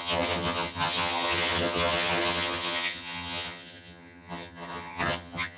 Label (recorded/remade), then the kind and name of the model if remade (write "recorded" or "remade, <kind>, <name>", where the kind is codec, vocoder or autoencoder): remade, vocoder, HiFi-GAN